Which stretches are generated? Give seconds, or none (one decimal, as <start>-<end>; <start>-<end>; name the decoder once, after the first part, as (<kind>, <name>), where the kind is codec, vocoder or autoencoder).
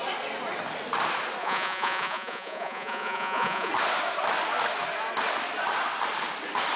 1.4-3.7 (vocoder, Vocos)